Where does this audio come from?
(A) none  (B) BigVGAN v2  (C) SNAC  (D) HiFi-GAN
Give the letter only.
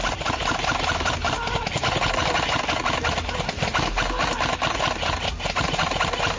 A